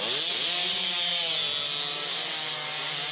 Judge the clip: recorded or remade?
recorded